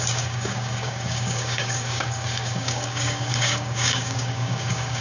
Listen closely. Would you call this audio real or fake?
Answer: fake